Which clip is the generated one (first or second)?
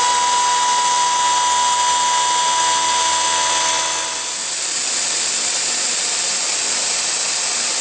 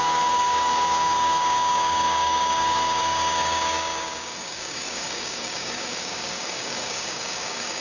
second